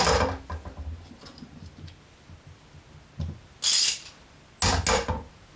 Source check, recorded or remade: recorded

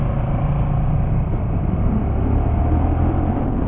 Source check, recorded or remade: recorded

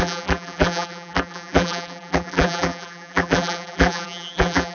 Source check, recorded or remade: remade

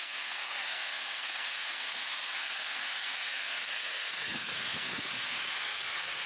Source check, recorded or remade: remade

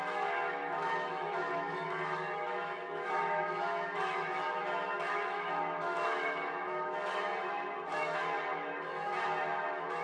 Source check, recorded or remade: remade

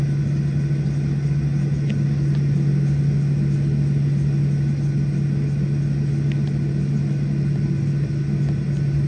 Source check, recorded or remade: recorded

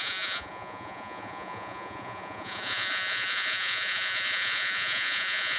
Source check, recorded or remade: remade